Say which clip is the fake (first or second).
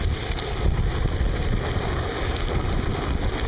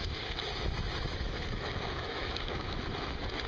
second